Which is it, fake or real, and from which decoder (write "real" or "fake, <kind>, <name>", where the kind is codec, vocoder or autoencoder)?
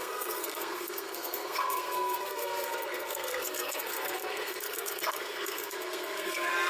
fake, codec, SNAC